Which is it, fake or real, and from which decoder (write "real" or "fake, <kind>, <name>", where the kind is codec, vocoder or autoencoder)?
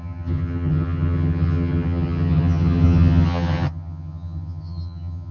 fake, vocoder, HiFi-GAN